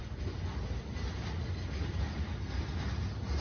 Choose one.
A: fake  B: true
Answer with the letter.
B